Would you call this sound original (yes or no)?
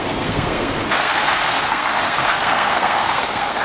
no